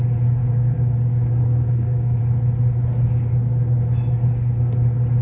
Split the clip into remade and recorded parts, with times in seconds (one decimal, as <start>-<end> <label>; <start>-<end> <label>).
0.0-0.4 recorded; 0.4-2.2 remade; 2.2-5.2 recorded